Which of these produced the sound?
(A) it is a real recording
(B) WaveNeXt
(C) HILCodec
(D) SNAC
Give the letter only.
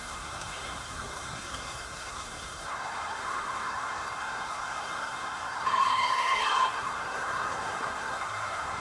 D